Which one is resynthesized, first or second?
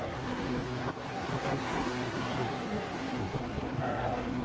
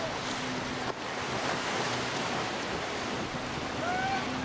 first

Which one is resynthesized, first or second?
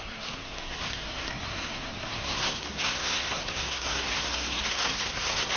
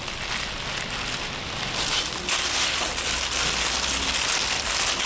first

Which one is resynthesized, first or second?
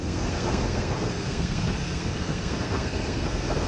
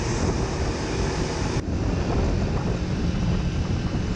first